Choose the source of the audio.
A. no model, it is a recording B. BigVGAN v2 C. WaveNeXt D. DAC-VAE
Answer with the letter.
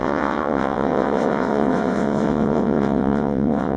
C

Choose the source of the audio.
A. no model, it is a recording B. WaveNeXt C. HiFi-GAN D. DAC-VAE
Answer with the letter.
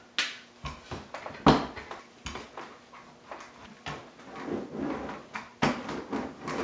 A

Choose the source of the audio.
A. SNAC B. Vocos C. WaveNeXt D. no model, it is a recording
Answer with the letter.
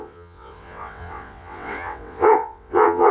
C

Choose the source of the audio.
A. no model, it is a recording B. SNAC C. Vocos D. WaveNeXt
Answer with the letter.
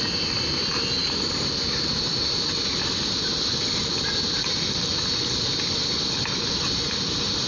A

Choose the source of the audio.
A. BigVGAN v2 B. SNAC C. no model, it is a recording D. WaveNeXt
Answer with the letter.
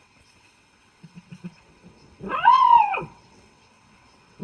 D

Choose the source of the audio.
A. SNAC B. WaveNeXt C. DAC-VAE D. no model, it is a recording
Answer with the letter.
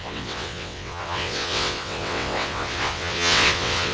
B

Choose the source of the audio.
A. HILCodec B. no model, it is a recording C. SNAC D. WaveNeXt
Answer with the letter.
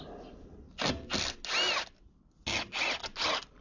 B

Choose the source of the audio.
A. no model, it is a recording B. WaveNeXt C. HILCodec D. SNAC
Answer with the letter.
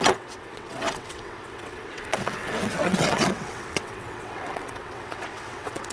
B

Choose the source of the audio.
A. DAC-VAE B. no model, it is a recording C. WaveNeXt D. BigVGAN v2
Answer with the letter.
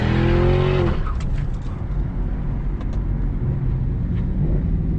B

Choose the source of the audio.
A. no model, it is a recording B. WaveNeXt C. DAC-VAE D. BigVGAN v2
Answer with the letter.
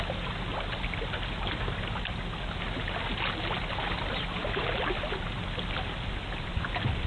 A